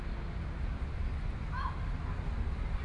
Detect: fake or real real